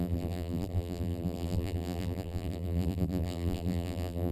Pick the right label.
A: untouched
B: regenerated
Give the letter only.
B